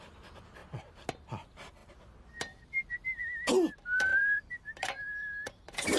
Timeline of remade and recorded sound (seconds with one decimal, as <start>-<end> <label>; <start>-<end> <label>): 0.0-4.1 recorded; 4.1-5.5 remade; 5.5-6.0 recorded